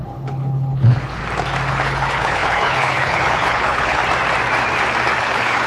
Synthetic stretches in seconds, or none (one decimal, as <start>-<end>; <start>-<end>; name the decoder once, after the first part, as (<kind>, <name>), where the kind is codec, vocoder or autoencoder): 0.0-1.2 (codec, HILCodec); 1.7-4.0; 5.2-5.7